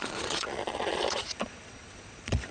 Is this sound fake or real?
fake